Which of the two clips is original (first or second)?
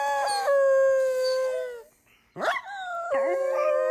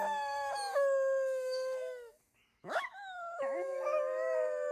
first